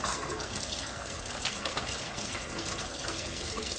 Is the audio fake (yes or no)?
yes